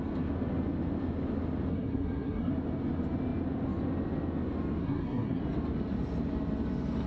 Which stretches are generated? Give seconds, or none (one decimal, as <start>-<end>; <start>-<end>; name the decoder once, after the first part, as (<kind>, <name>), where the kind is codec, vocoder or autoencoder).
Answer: 1.7-2.5 (codec, SNAC); 4.8-5.4